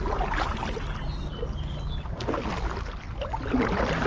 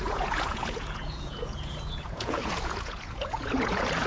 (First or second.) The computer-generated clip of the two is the second